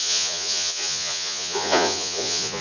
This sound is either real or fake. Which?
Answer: fake